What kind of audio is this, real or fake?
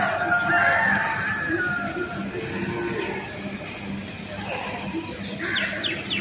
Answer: real